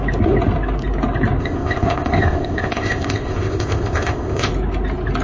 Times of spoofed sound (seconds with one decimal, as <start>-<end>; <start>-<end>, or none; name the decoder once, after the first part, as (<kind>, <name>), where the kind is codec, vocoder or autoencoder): 1.4-4.5 (codec, ZipCodec)